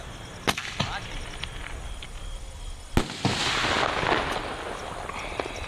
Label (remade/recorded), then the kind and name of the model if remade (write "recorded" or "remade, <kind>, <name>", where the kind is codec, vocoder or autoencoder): recorded